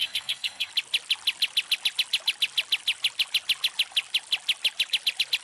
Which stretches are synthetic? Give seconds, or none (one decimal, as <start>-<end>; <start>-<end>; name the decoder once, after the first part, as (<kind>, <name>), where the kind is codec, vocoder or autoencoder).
0.0-0.7 (codec, SNAC)